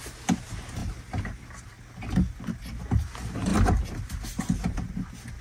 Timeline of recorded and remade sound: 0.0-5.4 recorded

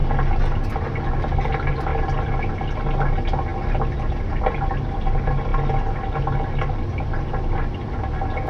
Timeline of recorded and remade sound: 0.0-8.5 recorded

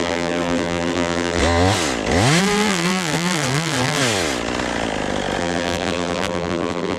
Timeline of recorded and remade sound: 0.0-1.4 remade; 1.4-2.4 recorded; 2.4-4.0 remade; 4.0-5.4 recorded; 5.4-7.0 remade

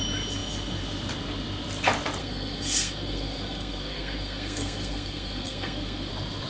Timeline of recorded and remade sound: 0.0-2.2 recorded; 2.2-6.1 remade; 6.1-6.5 recorded

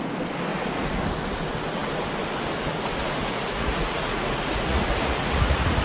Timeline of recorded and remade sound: 0.0-0.5 recorded; 0.5-1.0 remade; 1.0-3.2 recorded; 3.2-5.8 remade

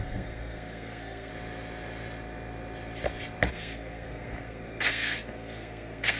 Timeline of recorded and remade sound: 0.0-1.3 remade; 1.3-3.5 recorded; 3.5-6.2 remade